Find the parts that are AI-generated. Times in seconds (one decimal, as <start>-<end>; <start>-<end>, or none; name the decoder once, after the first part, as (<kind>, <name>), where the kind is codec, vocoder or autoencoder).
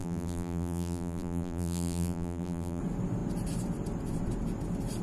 0.0-2.8 (vocoder, BigVGAN v2)